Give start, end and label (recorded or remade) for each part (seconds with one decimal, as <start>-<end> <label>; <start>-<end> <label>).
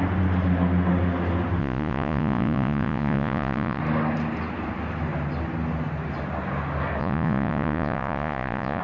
0.0-1.6 recorded; 1.6-3.8 remade; 3.8-7.0 recorded; 7.0-8.8 remade